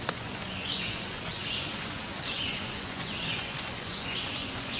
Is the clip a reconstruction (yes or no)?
yes